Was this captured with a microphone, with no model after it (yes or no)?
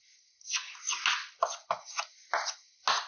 yes